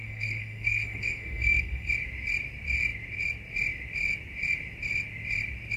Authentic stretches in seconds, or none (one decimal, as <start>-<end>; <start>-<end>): 1.9-5.8